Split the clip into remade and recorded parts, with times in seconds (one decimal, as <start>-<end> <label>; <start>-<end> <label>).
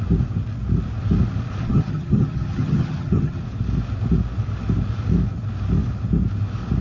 0.0-1.6 recorded; 1.6-3.4 remade; 3.4-6.8 recorded